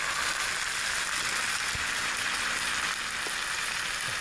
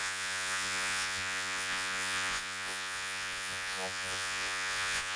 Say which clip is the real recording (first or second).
first